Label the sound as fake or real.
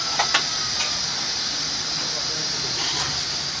real